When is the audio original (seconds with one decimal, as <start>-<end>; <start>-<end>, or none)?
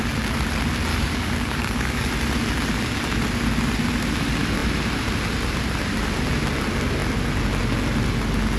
0.0-0.9; 2.1-8.6